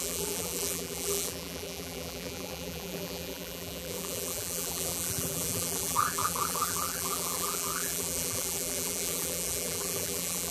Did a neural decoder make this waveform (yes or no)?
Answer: yes